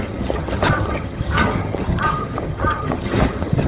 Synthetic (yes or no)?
yes